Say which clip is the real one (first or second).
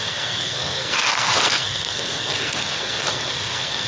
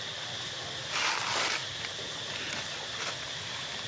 second